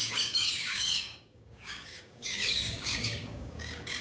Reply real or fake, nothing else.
fake